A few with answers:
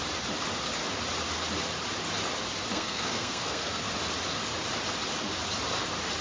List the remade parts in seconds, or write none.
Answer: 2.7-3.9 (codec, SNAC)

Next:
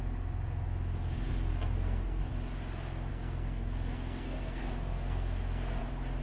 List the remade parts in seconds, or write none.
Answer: 1.5-2.2 (codec, SNAC); 3.1-5.8

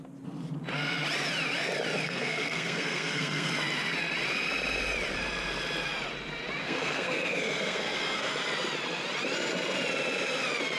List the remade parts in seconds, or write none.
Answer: 2.0-3.5 (codec, SNAC); 6.6-8.3

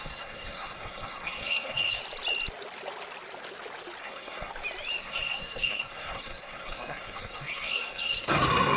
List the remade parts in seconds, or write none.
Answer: 0.0-2.0 (codec, SNAC); 4.0-4.5; 5.0-8.8

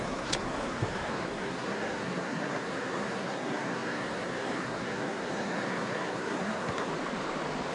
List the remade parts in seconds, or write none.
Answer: 0.0-6.9 (codec, SNAC)

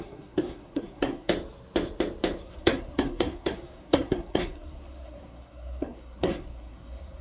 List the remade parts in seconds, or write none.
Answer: 0.0-1.3 (codec, SNAC); 2.4-7.2